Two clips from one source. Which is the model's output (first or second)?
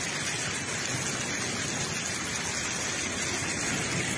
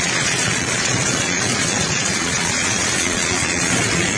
second